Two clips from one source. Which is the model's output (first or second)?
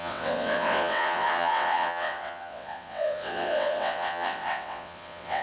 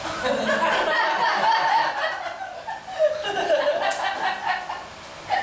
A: first